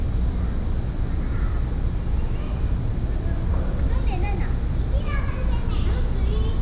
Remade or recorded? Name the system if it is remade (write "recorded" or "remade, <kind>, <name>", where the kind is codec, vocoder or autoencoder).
recorded